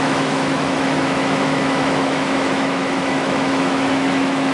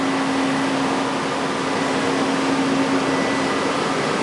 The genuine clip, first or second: second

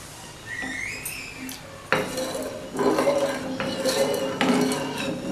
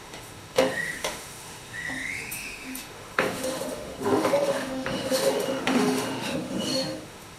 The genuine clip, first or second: first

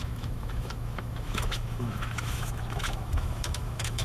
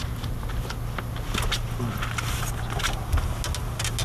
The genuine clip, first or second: second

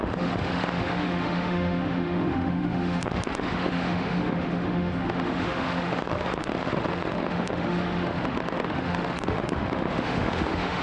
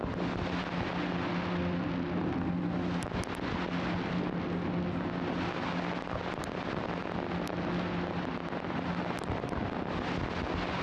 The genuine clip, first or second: second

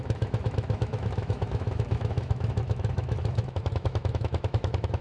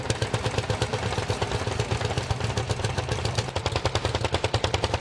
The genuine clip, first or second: second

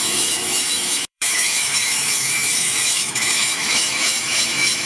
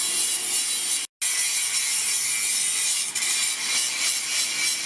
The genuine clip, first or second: second